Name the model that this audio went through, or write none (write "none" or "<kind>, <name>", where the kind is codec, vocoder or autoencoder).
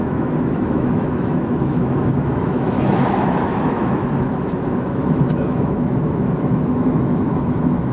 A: autoencoder, DAC-VAE